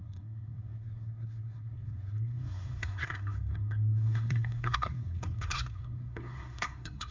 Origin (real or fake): fake